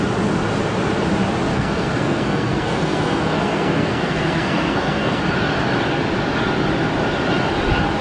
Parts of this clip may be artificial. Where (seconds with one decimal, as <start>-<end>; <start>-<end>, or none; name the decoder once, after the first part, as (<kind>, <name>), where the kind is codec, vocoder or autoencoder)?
1.5-5.2 (codec, SNAC)